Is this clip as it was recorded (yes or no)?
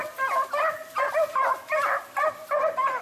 no